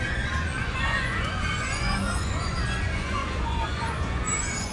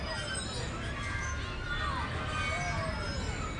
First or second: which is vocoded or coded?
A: first